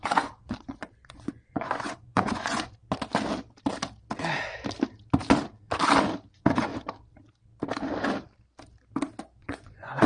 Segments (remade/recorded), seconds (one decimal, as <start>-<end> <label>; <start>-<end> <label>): 0.0-2.8 remade; 2.8-6.3 recorded; 6.3-6.7 remade; 6.7-9.4 recorded; 9.4-10.1 remade